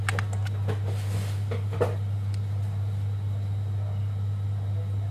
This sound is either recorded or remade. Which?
recorded